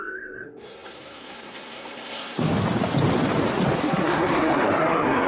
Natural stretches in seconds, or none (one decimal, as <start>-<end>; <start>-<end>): 2.5-3.8